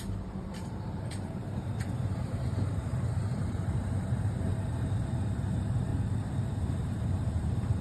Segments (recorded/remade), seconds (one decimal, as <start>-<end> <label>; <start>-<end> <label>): 0.0-5.9 remade; 5.9-6.6 recorded; 6.6-7.8 remade